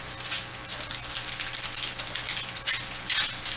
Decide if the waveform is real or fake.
real